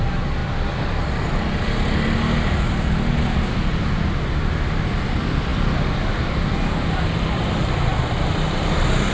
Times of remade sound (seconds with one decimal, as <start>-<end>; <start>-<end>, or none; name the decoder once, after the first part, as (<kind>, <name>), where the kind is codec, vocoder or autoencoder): none